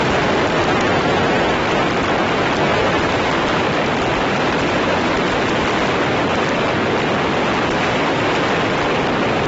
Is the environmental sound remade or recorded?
recorded